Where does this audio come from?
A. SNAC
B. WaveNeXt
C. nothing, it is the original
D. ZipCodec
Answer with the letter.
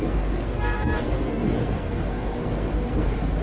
A